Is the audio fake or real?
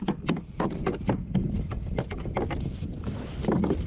real